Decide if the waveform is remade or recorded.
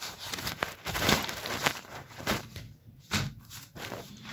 remade